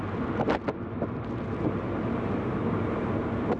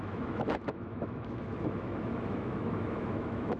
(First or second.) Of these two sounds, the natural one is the first